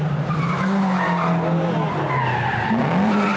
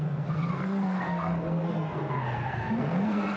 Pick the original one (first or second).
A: first